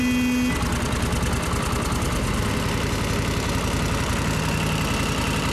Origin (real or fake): real